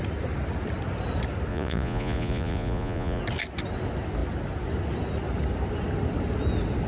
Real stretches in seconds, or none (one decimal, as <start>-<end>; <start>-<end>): 0.0-1.5; 3.2-6.9